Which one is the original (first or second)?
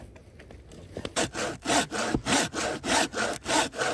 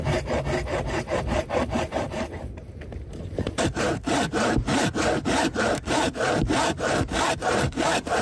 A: first